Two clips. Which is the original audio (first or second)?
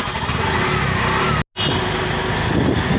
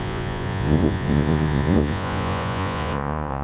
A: first